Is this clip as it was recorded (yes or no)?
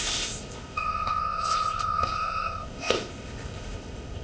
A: no